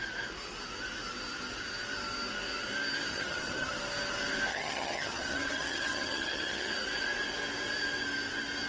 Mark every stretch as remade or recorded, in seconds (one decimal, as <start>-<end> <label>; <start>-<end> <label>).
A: 0.0-3.1 recorded; 3.1-3.7 remade; 3.7-4.5 recorded; 4.5-6.7 remade; 6.7-8.7 recorded